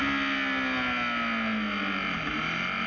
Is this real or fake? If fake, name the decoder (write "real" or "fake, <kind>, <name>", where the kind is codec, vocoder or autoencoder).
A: real